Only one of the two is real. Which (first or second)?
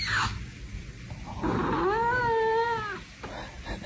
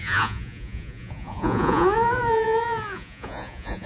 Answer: first